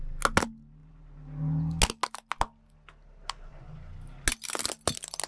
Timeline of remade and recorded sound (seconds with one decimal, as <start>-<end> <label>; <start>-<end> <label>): 0.0-5.3 recorded